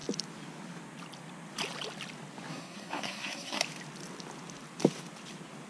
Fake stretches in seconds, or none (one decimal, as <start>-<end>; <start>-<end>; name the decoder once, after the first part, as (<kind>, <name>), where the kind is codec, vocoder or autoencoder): 2.5-3.6 (codec, SNAC)